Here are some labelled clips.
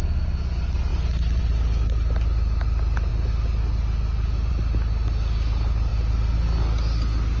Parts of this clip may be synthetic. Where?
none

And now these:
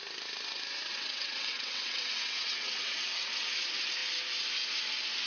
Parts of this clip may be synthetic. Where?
0.9-3.3 (vocoder, WaveNeXt)